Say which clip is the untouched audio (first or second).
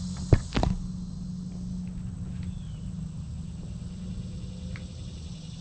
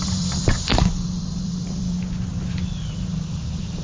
first